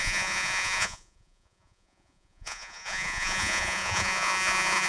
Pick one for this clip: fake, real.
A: fake